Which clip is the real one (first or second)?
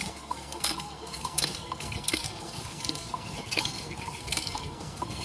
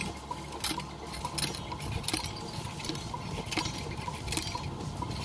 second